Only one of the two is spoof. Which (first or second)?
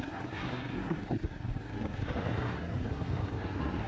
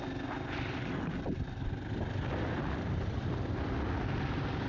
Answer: first